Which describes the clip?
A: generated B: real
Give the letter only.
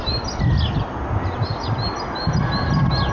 B